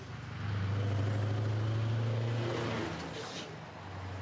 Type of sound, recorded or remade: recorded